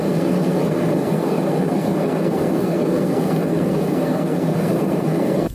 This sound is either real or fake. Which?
fake